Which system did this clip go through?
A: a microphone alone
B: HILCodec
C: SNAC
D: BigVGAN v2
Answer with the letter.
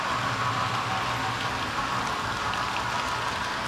A